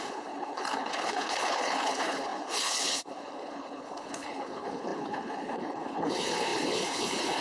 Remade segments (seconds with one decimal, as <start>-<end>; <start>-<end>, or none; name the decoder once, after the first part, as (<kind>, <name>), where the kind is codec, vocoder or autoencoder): 0.0-7.4 (codec, HILCodec)